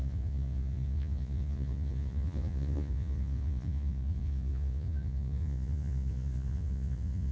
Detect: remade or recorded remade